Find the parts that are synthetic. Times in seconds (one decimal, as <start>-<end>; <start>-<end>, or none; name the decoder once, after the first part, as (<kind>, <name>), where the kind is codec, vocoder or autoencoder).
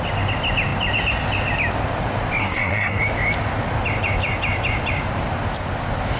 2.4-3.0 (codec, SNAC)